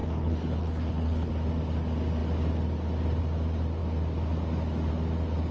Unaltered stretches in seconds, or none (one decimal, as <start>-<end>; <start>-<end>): 1.3-5.5

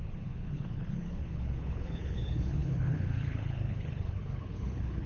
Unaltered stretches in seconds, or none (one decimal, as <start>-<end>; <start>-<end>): none

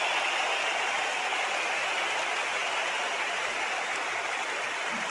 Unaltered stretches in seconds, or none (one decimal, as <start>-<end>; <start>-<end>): 0.0-5.1

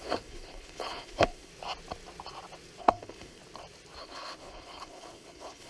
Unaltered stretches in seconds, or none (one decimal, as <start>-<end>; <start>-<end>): 1.5-2.8; 3.4-4.0

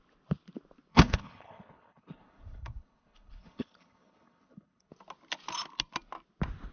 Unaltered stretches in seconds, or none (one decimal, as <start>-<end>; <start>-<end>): 0.0-0.9; 4.9-6.7

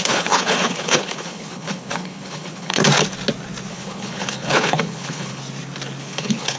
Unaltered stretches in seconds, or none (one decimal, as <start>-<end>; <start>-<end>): 2.8-3.7; 5.4-6.0